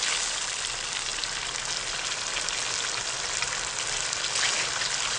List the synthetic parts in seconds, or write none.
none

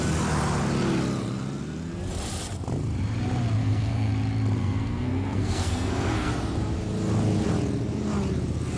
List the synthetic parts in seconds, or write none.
3.6-4.1 (codec, SNAC); 4.6-6.3

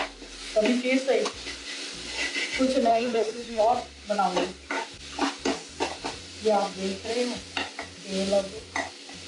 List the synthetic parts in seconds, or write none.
2.9-3.6 (codec, SNAC)

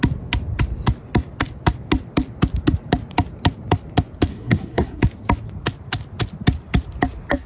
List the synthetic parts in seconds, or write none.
4.3-5.0 (codec, SNAC)

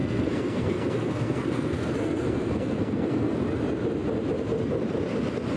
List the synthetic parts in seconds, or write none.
0.0-3.4 (codec, SNAC)